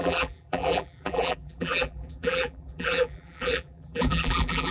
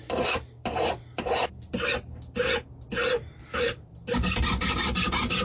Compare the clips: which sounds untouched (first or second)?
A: second